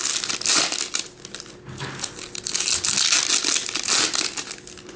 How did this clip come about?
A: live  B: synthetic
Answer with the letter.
A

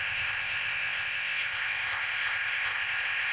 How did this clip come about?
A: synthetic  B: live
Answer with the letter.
A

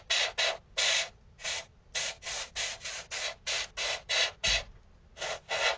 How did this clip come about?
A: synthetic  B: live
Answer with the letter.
B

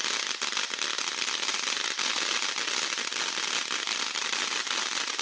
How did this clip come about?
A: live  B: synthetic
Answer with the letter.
A